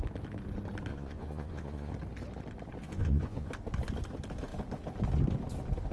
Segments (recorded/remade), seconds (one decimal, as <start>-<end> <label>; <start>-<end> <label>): 0.0-0.9 recorded; 0.9-1.9 remade; 1.9-2.8 recorded; 2.8-3.5 remade; 3.5-5.9 recorded